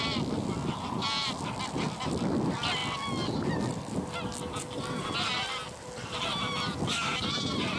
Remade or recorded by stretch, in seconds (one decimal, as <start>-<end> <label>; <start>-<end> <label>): 0.0-7.8 recorded